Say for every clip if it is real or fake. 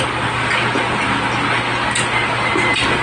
real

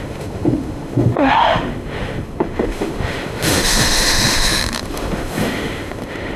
fake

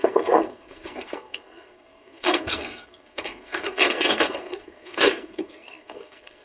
fake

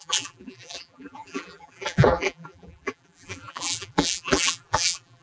fake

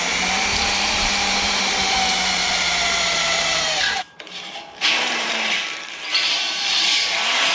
fake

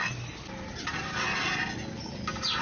real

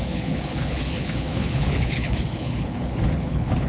fake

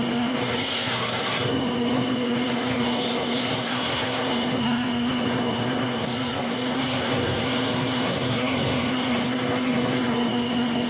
fake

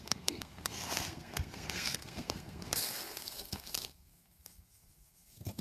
fake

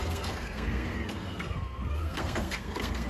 fake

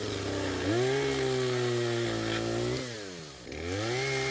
real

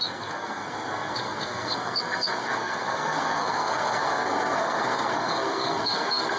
fake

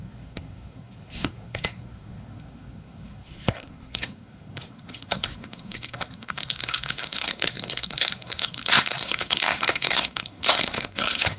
fake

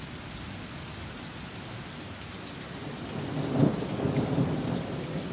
real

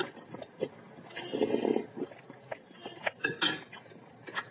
real